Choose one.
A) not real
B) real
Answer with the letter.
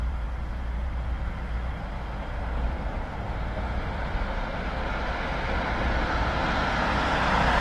A